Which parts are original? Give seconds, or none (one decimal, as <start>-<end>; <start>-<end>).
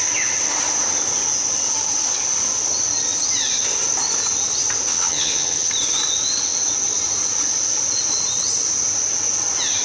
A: 0.0-4.9; 5.7-9.8